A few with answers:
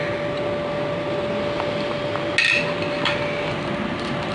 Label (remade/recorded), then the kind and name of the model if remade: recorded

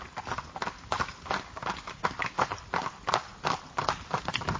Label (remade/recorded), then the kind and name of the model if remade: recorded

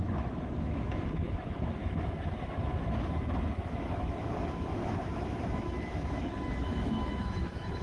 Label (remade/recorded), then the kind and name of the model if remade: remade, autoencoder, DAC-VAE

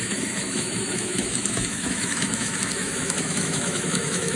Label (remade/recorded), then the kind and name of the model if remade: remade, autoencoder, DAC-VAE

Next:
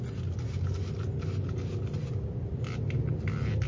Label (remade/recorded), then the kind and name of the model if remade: recorded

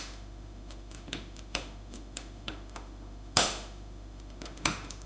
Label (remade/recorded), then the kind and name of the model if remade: remade, autoencoder, DAC-VAE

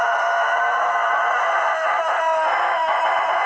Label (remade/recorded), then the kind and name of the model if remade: recorded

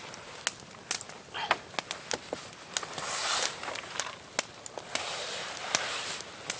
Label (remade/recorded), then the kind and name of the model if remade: recorded